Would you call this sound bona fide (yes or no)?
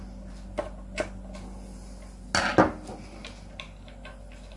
yes